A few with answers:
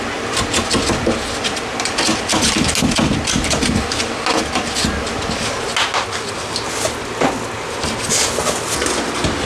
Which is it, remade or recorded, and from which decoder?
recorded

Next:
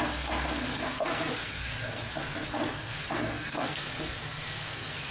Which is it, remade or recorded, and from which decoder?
remade, codec, SNAC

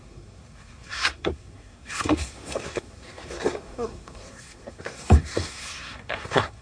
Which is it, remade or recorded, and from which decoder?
remade, codec, SNAC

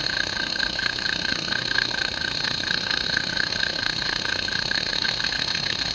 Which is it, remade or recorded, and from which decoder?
remade, codec, SNAC